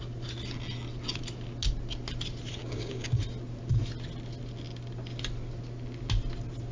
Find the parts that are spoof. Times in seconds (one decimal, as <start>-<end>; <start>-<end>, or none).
2.6-3.2